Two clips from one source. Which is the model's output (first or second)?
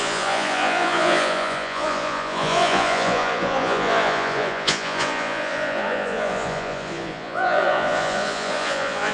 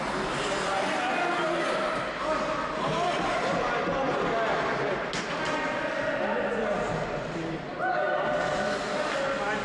first